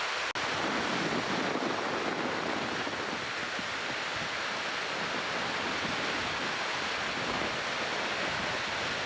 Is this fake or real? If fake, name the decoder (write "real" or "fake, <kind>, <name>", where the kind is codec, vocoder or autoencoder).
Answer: real